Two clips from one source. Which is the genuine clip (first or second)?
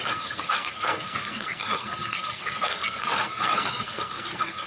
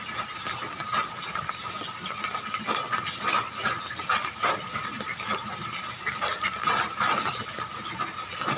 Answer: second